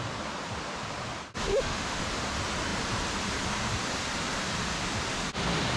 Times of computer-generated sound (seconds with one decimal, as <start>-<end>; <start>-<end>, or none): 1.5-2.0